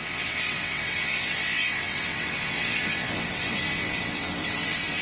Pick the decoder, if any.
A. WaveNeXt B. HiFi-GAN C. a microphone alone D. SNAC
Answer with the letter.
A